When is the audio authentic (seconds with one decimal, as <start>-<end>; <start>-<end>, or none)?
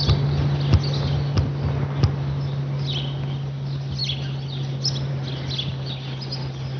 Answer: 0.0-6.8